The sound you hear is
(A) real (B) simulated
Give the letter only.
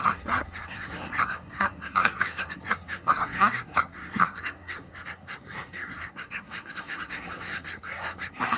B